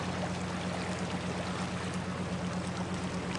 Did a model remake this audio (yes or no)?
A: no